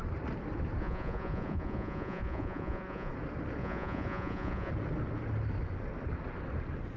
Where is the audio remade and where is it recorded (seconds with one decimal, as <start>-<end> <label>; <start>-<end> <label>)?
0.0-0.8 recorded; 0.8-3.1 remade; 3.1-3.6 recorded; 3.6-4.7 remade; 4.7-7.0 recorded